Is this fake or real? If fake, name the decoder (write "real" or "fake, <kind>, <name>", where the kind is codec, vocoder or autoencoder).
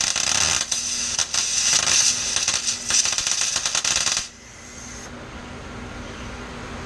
real